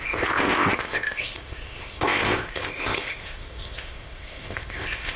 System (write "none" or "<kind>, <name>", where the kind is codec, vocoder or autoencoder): codec, ZipCodec